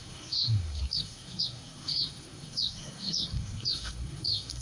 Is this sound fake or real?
fake